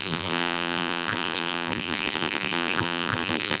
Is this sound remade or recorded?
remade